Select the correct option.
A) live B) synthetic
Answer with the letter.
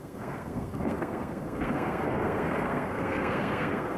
B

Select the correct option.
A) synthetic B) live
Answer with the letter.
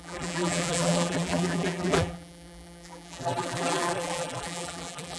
A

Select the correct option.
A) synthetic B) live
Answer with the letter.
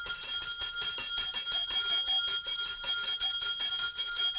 B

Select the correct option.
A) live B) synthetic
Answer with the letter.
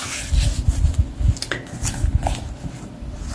A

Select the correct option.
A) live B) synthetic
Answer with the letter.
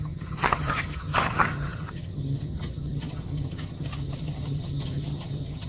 B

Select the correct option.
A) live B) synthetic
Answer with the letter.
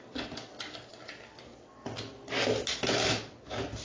A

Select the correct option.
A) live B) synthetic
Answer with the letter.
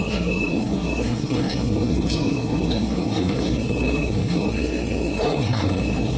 B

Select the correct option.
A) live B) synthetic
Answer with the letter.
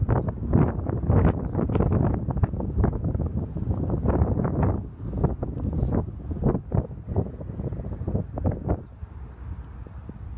A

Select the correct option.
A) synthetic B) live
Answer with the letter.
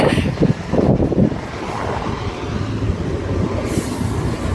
A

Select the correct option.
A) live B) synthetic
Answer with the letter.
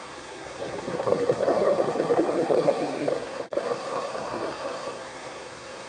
B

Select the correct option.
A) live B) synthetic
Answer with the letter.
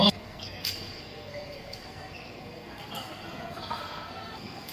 B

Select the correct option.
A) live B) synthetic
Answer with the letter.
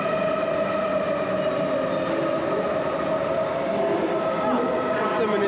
A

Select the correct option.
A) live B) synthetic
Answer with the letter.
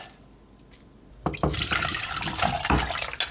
A